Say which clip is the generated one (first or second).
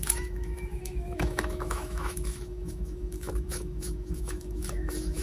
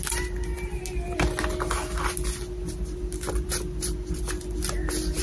first